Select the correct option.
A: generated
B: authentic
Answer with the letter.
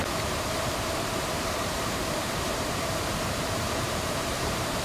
A